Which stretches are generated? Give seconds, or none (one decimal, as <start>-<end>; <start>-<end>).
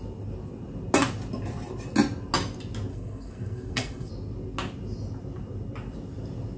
2.9-4.1